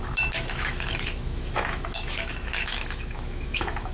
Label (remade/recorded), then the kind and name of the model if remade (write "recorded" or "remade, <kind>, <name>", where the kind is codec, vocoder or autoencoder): remade, autoencoder, DAC-VAE